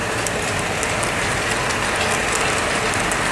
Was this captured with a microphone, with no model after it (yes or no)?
yes